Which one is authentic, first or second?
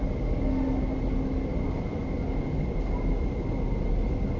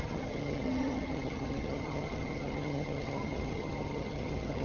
first